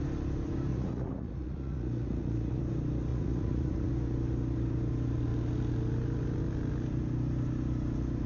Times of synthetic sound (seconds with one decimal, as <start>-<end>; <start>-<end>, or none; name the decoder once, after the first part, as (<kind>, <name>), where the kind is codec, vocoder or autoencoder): 0.7-2.6 (vocoder, Vocos); 3.1-3.9